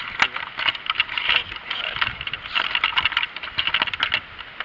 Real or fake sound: real